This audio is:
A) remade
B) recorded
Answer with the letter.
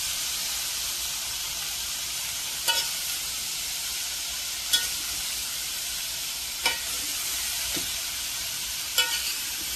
B